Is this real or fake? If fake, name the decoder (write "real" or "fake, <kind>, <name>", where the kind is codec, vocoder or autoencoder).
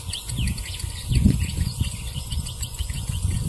fake, vocoder, Vocos